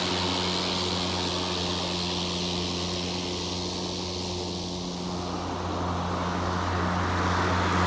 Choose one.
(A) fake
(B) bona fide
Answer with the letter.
B